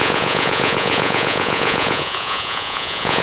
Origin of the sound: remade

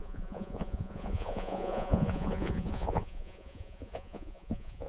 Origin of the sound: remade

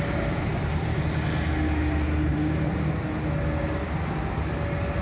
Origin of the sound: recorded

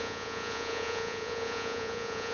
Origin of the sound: remade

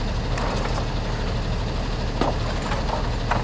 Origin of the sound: recorded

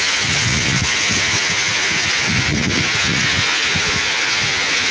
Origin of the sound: remade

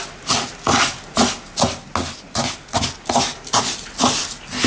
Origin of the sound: recorded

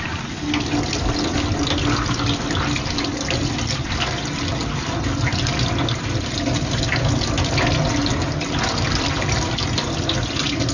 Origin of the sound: recorded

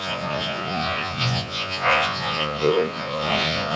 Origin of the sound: remade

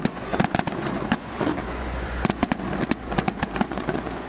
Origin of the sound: remade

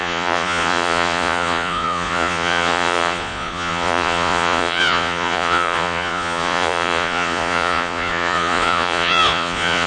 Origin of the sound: remade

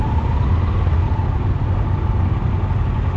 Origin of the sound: recorded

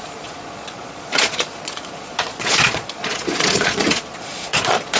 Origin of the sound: remade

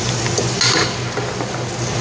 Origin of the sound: recorded